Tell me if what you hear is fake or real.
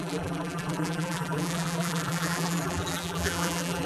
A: fake